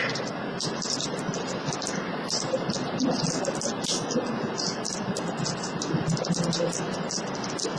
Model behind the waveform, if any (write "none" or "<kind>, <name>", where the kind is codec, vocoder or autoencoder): none